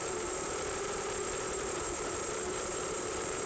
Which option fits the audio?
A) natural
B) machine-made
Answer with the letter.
B